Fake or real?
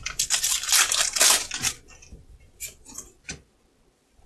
real